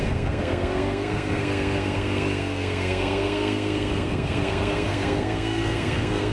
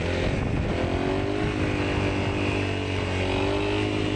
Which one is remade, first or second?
first